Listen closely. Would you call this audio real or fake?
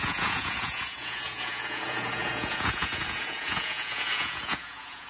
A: fake